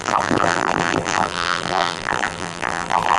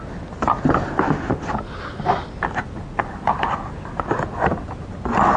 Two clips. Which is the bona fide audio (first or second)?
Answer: second